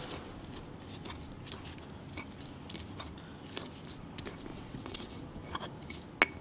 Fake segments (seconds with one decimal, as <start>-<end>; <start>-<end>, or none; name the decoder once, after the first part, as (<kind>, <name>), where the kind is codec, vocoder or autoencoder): 4.5-5.2 (vocoder, WaveNeXt)